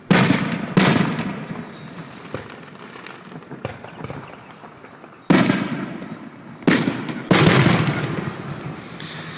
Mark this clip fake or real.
real